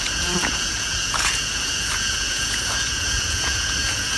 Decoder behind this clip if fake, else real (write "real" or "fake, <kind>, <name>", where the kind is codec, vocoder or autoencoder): fake, vocoder, Vocos